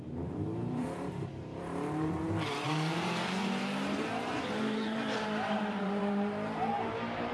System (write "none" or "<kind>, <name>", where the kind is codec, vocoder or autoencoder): vocoder, BigVGAN v2